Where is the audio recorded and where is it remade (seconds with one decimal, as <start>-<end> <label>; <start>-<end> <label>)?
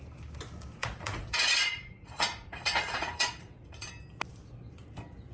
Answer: 0.0-0.8 recorded; 0.8-3.9 remade; 3.9-5.3 recorded